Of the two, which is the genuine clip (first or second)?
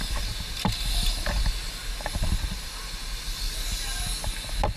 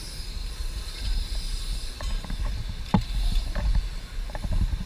first